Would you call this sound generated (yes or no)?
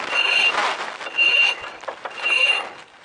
no